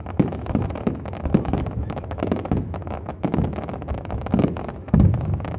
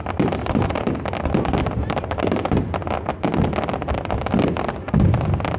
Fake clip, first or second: first